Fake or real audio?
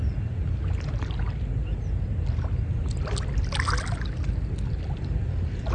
real